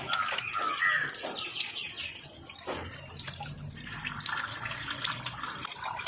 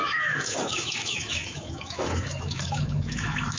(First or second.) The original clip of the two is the first